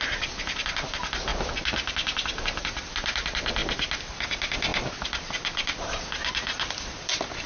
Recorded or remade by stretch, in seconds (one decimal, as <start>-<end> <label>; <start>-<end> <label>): 0.0-7.5 recorded